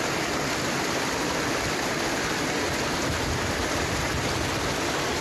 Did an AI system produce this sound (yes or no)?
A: no